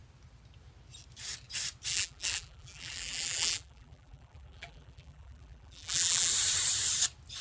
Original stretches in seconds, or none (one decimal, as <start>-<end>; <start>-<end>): 0.0-1.9; 6.3-7.4